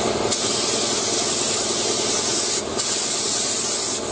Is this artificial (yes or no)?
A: no